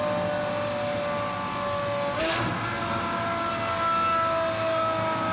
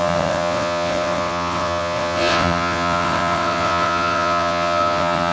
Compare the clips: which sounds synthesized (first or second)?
second